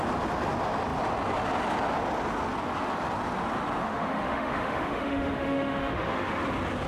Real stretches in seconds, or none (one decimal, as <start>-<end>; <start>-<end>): 0.0-3.8; 6.3-6.9